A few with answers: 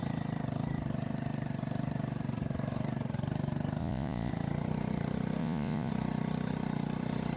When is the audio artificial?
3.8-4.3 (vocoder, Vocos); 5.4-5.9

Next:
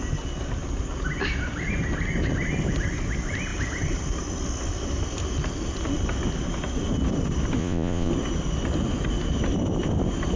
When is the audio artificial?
7.6-8.1 (vocoder, Vocos)

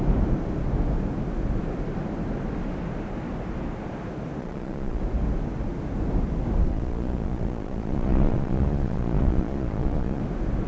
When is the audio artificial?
4.4-5.0 (vocoder, Vocos); 6.7-10.2

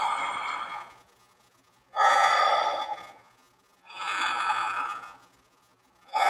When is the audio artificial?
0.7-2.3 (vocoder, Vocos); 2.8-6.3

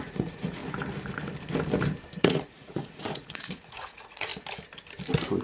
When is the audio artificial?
0.0-0.6 (vocoder, Vocos); 2.2-4.3

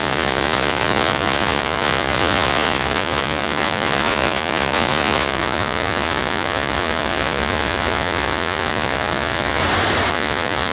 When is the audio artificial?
0.0-9.6 (vocoder, Vocos); 10.1-10.7

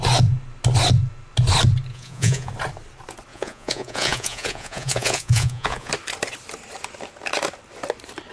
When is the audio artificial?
1.9-2.5 (vocoder, Vocos); 3.3-5.9

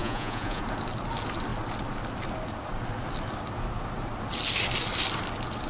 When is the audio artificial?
0.0-0.6 (vocoder, Vocos)